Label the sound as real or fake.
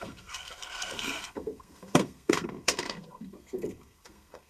fake